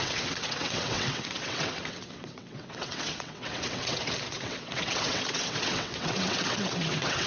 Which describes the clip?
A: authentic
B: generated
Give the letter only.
B